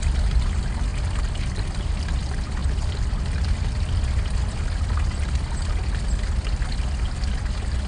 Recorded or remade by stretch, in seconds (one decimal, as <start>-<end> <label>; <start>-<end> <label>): 0.0-7.9 recorded